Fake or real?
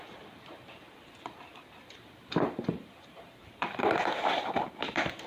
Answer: fake